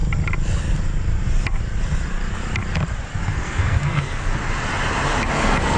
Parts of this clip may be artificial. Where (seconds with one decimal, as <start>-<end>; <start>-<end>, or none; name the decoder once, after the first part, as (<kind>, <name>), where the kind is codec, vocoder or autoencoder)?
3.2-4.4 (codec, SNAC); 5.3-5.8